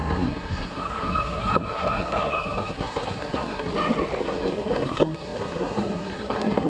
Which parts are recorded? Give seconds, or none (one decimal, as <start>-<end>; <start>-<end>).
3.7-4.2